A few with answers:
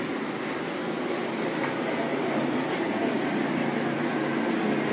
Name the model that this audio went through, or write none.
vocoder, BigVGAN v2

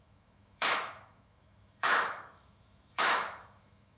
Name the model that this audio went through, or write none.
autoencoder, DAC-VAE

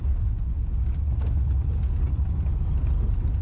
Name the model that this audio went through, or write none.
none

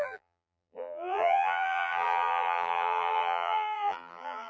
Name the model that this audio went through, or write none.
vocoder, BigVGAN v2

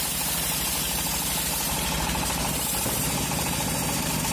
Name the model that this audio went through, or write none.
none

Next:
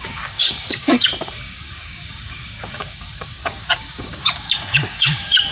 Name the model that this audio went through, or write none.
codec, DAC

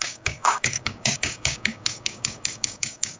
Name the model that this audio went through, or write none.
codec, DAC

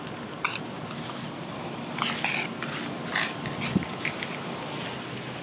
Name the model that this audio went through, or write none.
none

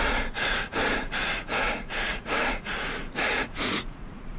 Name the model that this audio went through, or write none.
vocoder, Vocos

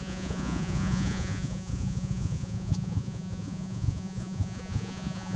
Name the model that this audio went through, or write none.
vocoder, Vocos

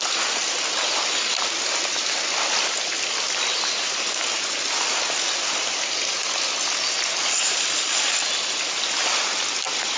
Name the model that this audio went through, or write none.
none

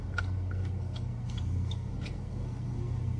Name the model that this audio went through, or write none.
codec, SNAC